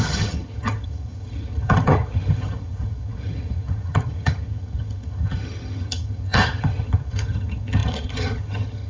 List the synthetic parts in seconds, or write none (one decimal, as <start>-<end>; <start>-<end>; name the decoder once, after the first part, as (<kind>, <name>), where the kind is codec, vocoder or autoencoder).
0.0-8.9 (vocoder, HiFi-GAN)